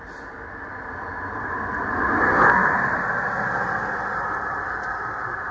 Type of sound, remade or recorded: recorded